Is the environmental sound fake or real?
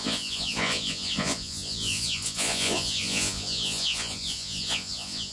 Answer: fake